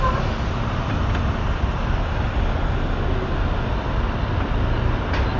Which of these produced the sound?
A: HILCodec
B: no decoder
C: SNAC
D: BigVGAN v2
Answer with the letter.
B